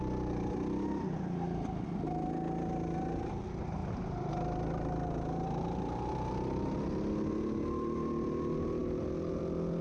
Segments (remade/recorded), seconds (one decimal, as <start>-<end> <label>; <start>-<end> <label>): 0.0-9.8 recorded